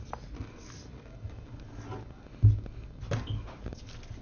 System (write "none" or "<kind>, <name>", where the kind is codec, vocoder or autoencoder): none